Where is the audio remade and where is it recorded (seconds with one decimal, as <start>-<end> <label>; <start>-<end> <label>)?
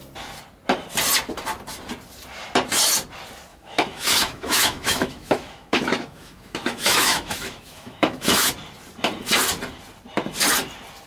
0.0-3.5 recorded; 3.5-8.5 remade; 8.5-11.1 recorded